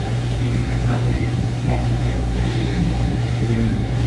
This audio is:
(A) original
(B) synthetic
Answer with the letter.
B